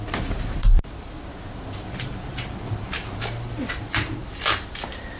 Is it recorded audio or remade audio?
remade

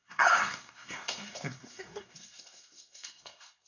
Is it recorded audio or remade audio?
remade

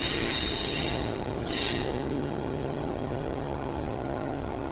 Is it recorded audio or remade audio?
remade